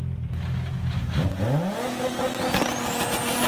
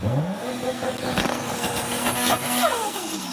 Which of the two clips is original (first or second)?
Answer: first